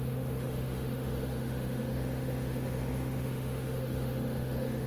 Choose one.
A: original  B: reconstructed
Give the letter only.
B